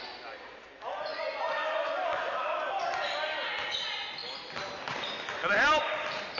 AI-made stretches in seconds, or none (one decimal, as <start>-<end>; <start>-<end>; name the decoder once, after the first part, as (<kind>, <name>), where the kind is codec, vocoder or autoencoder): none